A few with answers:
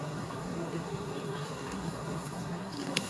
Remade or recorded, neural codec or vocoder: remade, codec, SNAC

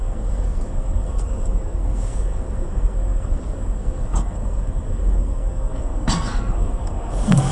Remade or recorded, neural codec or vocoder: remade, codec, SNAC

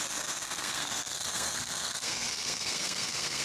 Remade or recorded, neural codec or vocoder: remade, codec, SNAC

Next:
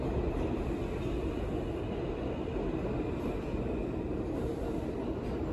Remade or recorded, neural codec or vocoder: recorded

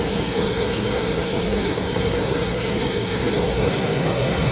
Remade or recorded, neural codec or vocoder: remade, codec, SNAC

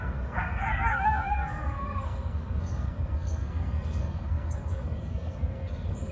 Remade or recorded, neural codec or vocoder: remade, codec, SNAC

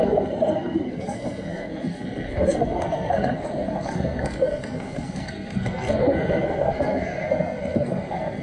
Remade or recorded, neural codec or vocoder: remade, codec, SNAC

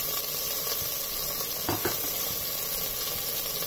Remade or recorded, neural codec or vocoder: recorded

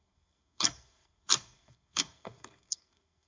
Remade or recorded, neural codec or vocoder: remade, codec, SNAC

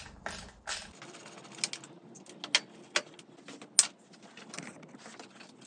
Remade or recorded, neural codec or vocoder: recorded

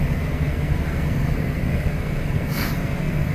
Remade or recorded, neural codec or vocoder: remade, codec, SNAC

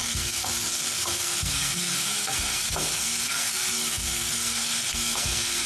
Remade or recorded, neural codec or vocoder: remade, codec, SNAC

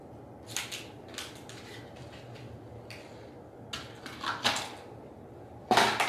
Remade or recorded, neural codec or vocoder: recorded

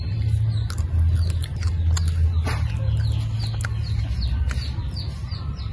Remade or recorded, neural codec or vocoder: recorded